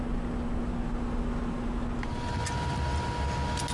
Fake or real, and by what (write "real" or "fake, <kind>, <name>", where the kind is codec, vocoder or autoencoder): real